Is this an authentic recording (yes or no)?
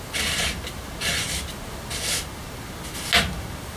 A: yes